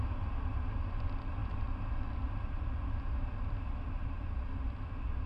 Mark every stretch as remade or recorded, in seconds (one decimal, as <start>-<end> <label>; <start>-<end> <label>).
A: 0.0-5.3 recorded